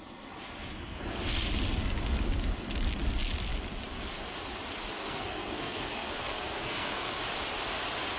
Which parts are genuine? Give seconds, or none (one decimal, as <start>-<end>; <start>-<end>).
0.0-5.0; 7.2-8.2